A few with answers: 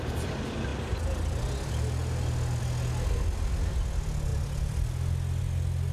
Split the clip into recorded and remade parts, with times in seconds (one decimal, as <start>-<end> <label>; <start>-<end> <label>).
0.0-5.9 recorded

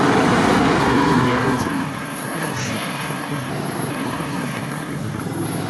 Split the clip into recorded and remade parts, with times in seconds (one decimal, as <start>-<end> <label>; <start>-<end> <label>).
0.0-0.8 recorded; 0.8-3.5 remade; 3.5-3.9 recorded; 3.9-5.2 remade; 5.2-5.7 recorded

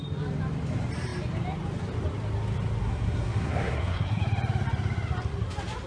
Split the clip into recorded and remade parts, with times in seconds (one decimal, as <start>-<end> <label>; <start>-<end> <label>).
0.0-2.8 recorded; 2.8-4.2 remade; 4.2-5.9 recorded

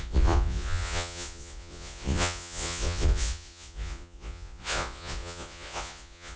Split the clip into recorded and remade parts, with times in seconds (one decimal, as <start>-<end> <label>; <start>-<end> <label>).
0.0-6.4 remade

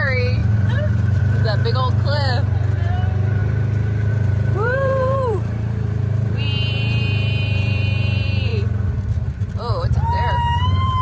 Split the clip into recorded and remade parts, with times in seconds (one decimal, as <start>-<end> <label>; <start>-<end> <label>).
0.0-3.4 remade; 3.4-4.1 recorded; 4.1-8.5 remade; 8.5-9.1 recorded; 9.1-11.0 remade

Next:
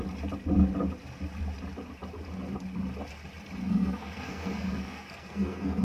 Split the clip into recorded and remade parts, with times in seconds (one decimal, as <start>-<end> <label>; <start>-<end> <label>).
0.0-3.6 recorded; 3.6-5.8 remade

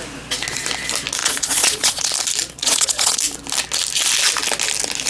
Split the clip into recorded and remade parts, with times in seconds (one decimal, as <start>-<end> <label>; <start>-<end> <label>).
0.0-1.2 recorded; 1.2-2.1 remade; 2.1-2.6 recorded; 2.6-3.2 remade; 3.2-5.1 recorded

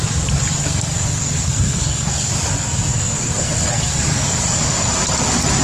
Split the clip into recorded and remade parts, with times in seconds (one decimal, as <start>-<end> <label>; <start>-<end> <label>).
0.0-0.6 recorded; 0.6-2.3 remade; 2.3-2.9 recorded; 2.9-4.6 remade; 4.6-5.6 recorded